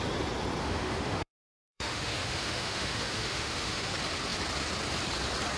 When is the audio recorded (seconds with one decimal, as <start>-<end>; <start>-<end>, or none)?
0.0-0.6; 3.9-5.6